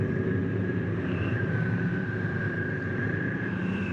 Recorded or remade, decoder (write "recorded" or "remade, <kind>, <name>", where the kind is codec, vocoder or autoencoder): remade, vocoder, BigVGAN v2